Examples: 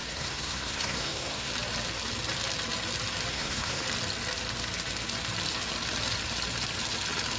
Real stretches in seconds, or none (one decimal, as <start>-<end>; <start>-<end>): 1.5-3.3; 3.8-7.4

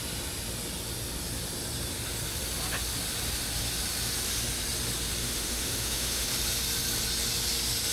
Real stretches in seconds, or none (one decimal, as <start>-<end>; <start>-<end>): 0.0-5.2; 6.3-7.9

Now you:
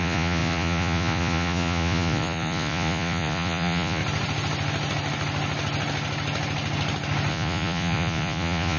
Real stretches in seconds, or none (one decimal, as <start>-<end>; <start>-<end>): 4.0-7.3